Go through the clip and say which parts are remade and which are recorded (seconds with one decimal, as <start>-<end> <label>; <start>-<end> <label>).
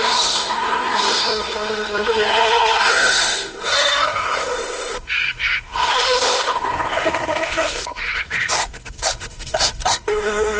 0.0-10.6 remade